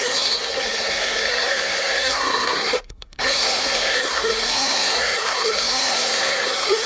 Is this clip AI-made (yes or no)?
yes